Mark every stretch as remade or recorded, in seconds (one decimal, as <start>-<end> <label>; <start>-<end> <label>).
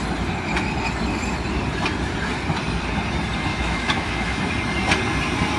0.0-3.5 recorded; 3.5-4.4 remade; 4.4-5.6 recorded